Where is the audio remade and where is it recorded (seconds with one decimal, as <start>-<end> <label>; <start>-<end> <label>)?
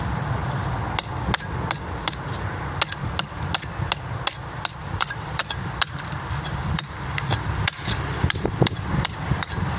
0.0-0.4 remade; 0.4-4.7 recorded; 4.7-5.4 remade; 5.4-6.1 recorded; 6.1-9.8 remade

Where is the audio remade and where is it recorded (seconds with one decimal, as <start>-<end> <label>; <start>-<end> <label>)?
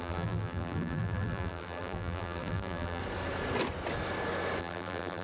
0.0-3.0 remade; 3.0-4.6 recorded; 4.6-5.2 remade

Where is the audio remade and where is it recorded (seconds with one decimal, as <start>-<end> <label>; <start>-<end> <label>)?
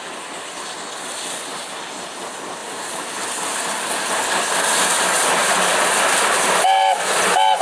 0.0-2.6 recorded; 2.6-4.1 remade; 4.1-5.4 recorded; 5.4-6.4 remade; 6.4-7.6 recorded